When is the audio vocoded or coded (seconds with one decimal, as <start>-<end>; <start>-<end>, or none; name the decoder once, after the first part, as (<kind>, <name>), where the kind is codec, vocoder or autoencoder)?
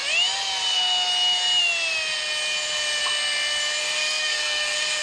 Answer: 3.8-5.0 (codec, SNAC)